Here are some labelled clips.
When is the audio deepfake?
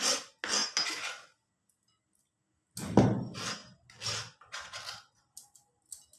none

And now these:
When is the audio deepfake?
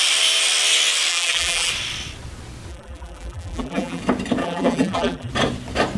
1.1-1.7 (vocoder, BigVGAN v2); 2.7-4.0; 4.4-5.3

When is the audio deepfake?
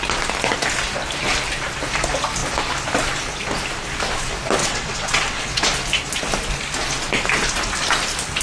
4.6-5.6 (vocoder, WaveNeXt)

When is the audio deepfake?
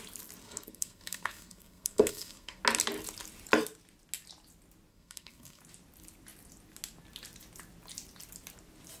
0.4-2.6 (codec, SNAC); 4.9-5.6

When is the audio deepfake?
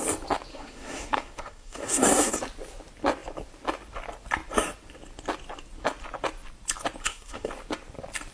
0.5-2.3 (codec, SNAC); 7.0-7.5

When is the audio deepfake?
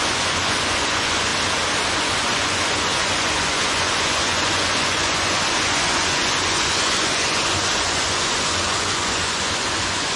0.0-1.3 (vocoder, Vocos); 1.9-10.2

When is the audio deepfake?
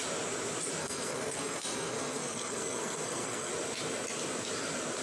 0.8-3.5 (codec, SNAC)